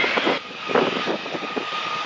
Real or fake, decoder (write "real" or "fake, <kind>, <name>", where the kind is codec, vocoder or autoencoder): real